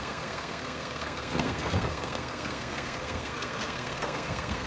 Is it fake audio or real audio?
fake